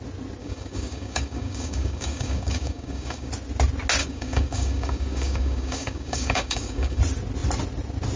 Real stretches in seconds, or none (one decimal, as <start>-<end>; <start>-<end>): 0.0-0.4; 3.3-4.0; 7.0-8.2